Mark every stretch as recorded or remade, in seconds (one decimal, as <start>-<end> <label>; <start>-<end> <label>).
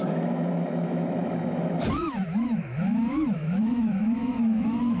0.0-5.0 remade